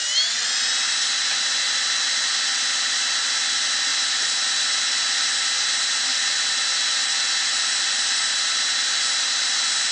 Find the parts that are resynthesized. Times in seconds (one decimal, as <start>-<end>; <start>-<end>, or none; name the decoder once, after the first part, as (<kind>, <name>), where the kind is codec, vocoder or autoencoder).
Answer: none

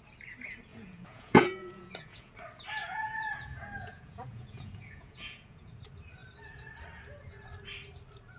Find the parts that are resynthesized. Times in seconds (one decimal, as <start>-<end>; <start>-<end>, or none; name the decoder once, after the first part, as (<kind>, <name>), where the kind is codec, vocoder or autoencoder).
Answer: 0.7-2.3 (vocoder, Vocos); 2.8-5.7

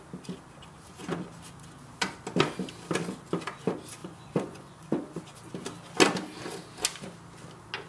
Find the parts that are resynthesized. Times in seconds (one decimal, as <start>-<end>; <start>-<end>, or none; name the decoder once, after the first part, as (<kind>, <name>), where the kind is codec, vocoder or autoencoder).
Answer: 4.0-5.2 (vocoder, Vocos)

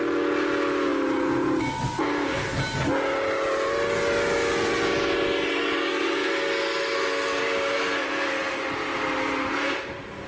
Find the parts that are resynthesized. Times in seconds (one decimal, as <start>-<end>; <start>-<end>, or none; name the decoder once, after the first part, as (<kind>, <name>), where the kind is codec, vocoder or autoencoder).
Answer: none